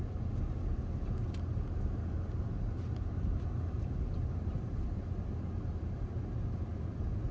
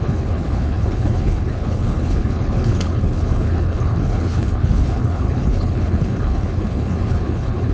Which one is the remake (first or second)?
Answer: second